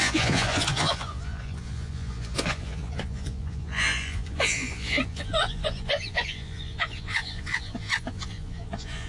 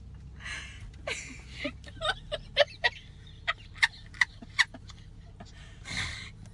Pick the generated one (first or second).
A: first